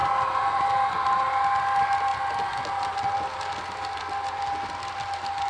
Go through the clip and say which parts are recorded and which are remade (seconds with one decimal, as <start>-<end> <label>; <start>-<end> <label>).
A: 0.0-5.5 recorded